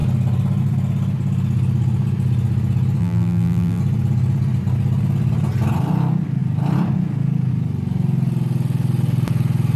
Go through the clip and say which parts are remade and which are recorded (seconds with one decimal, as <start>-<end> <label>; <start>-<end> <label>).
0.0-3.0 recorded; 3.0-3.8 remade; 3.8-9.8 recorded